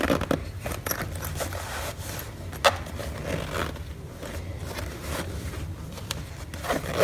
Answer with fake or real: real